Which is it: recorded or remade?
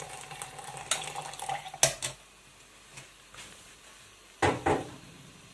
recorded